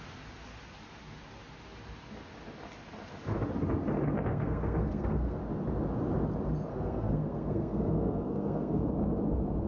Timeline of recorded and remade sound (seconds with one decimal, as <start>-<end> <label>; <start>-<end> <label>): 0.0-4.3 recorded; 4.3-5.4 remade; 5.4-6.7 recorded; 6.7-8.8 remade; 8.8-9.7 recorded